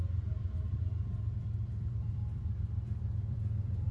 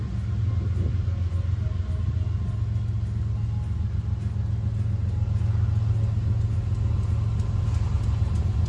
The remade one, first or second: first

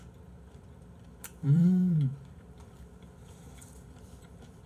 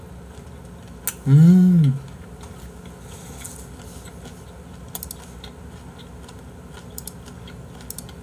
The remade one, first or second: first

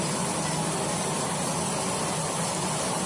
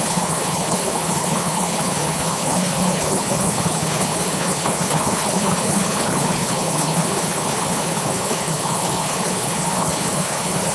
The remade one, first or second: second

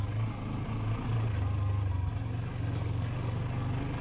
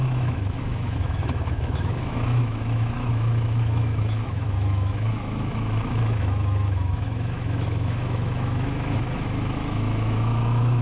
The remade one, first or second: second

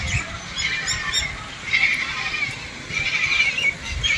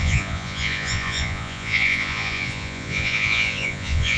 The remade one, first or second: second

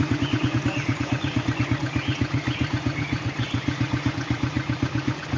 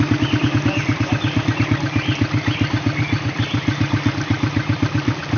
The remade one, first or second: first